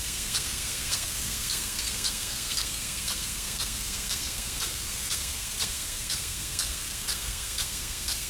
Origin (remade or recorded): remade